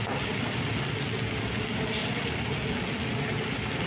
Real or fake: real